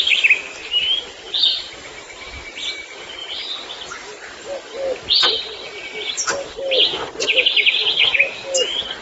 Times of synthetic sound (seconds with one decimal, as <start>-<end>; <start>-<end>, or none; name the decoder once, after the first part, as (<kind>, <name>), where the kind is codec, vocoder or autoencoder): none